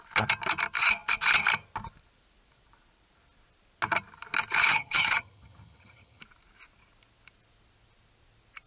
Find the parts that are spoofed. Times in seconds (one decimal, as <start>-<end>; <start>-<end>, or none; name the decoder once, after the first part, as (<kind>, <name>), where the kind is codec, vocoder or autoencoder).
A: 4.7-6.2 (vocoder, HiFi-GAN)